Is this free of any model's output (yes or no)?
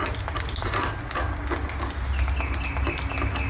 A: yes